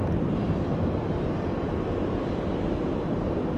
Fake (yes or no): no